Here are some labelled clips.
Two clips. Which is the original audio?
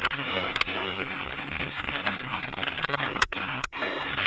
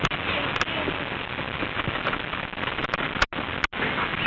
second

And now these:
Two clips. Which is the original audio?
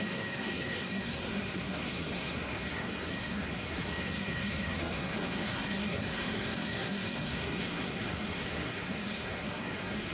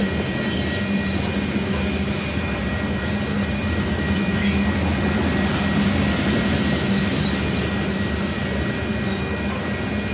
second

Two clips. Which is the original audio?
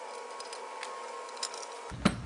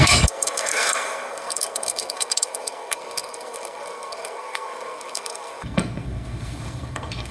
first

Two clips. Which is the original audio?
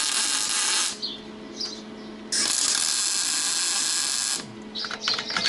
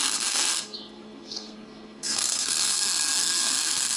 first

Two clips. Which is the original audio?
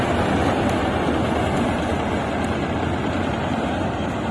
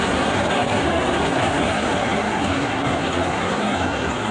first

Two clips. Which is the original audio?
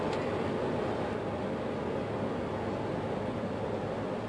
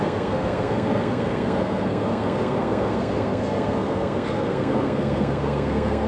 first